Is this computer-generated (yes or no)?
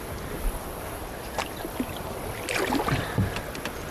no